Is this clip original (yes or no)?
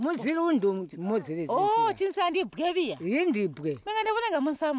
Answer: yes